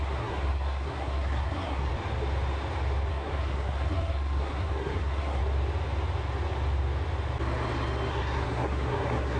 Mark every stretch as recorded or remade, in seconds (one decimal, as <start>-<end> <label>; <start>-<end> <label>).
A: 0.0-1.9 remade; 1.9-3.1 recorded; 3.1-5.4 remade; 5.4-8.1 recorded; 8.1-9.4 remade